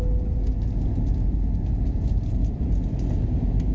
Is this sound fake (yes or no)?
no